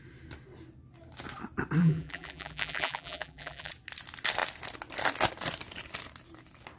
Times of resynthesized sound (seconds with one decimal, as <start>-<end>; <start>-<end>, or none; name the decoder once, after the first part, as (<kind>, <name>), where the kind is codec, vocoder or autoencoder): 1.8-3.7 (vocoder, BigVGAN v2)